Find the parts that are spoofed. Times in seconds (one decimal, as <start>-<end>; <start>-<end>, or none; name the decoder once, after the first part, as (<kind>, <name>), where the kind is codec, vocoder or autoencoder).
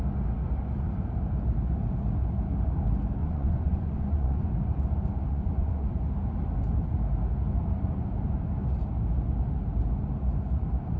3.2-4.5 (vocoder, Vocos); 5.3-6.0